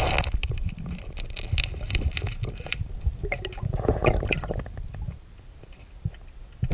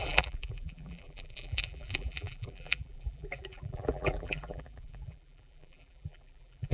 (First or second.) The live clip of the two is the first